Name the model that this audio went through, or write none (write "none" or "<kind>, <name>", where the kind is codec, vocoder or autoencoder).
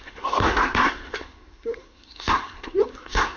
codec, SNAC